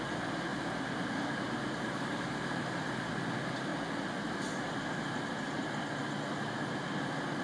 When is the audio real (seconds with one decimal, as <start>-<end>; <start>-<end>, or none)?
0.0-0.5; 3.1-7.4